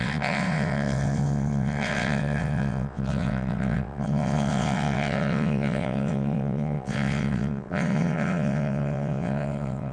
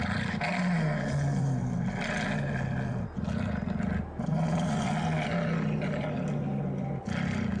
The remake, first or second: first